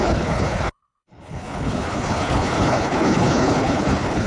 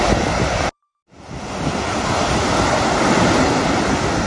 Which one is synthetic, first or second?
first